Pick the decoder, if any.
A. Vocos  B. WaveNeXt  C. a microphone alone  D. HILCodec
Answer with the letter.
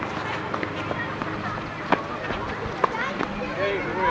C